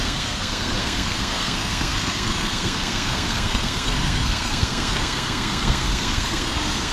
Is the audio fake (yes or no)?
yes